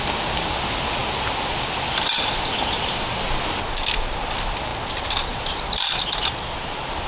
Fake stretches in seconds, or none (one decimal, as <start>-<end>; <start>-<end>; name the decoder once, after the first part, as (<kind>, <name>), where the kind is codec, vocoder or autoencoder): none